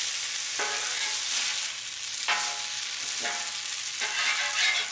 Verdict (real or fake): real